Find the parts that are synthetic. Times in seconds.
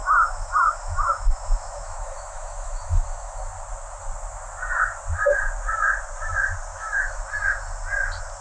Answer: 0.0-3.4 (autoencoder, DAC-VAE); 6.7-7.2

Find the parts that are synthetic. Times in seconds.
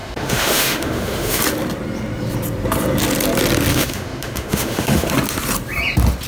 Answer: 0.0-1.4 (autoencoder, DAC-VAE); 3.7-5.1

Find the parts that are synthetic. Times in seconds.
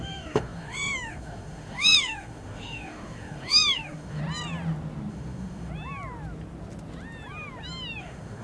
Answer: 0.0-4.2 (autoencoder, DAC-VAE); 5.1-5.7; 8.0-8.4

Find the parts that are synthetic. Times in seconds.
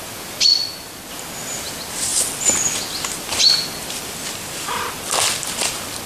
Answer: none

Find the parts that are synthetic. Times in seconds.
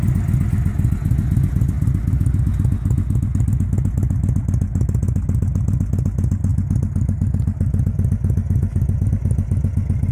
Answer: none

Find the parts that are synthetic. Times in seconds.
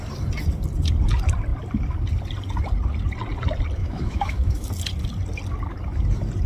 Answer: 3.8-4.7 (autoencoder, DAC-VAE)